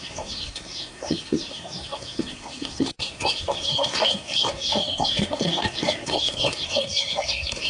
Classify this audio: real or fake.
fake